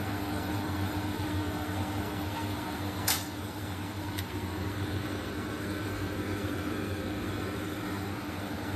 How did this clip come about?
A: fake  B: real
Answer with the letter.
A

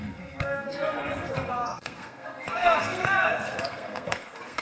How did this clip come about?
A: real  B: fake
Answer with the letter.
B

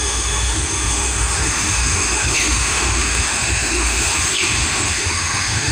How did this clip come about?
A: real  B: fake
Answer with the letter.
B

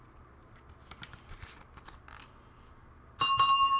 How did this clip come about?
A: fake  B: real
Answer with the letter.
B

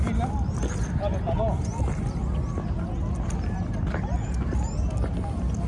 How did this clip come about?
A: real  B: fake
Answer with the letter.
A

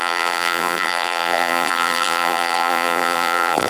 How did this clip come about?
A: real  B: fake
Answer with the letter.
B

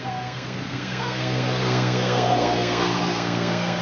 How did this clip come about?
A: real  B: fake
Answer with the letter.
B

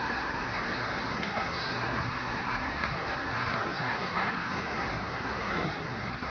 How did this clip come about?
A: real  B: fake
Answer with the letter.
B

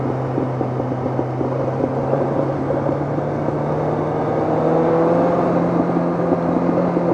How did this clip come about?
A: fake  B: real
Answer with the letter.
B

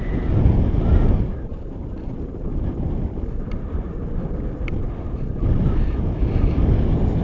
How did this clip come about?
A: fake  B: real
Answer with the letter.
B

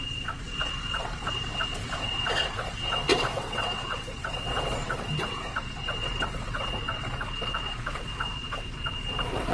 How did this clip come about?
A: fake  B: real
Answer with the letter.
A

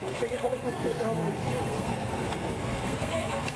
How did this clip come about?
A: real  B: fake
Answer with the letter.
B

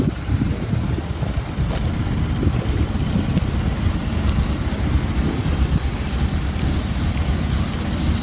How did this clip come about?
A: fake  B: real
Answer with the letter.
B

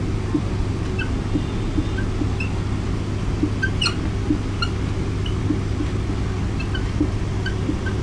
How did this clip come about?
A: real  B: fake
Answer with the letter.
A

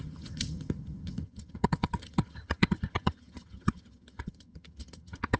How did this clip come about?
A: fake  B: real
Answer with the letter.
A